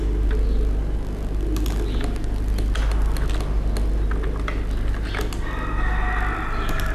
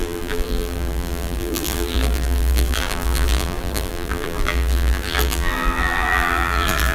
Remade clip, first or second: second